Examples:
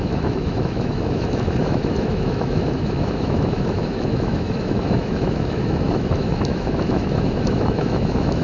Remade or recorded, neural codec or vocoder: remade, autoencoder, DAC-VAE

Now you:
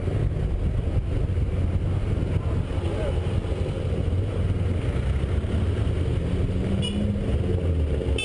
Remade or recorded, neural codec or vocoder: recorded